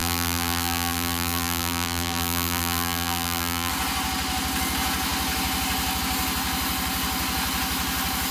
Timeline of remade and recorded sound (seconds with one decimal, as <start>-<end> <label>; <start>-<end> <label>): 0.0-3.7 remade; 3.7-8.3 recorded